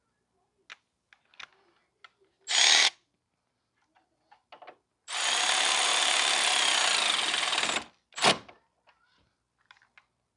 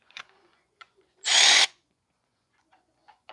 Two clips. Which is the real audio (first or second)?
first